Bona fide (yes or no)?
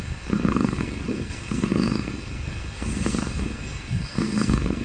no